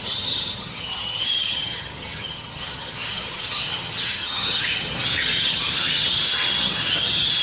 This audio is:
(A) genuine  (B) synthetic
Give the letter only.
B